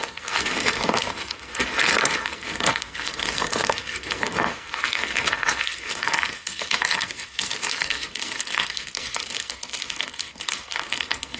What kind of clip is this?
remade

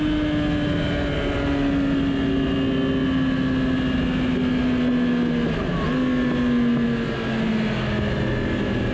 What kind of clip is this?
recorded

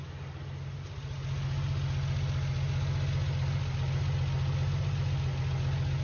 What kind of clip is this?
recorded